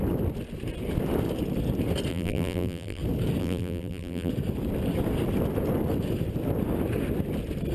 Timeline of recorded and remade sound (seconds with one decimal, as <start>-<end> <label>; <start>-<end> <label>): 0.0-2.1 recorded; 2.1-3.0 remade; 3.0-3.4 recorded; 3.4-4.3 remade; 4.3-7.7 recorded